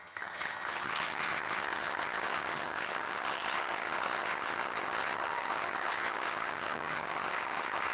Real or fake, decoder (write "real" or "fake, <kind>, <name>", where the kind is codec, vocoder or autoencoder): fake, vocoder, HiFi-GAN